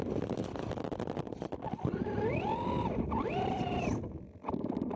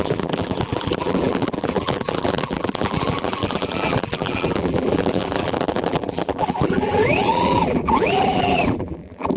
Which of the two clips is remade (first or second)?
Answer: second